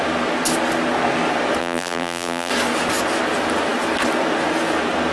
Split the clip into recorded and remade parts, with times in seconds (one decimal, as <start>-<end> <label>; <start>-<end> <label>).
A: 0.0-1.6 recorded; 1.6-2.5 remade; 2.5-5.1 recorded